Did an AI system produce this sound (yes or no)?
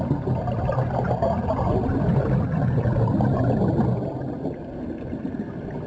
no